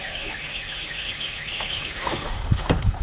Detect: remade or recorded remade